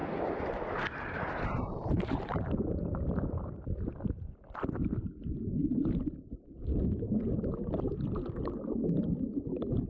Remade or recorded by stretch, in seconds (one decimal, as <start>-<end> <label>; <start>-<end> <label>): 0.0-2.4 remade; 2.4-5.6 recorded; 5.6-6.4 remade; 6.4-9.9 recorded